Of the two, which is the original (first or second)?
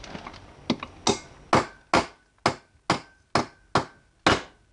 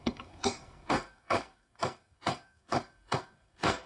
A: first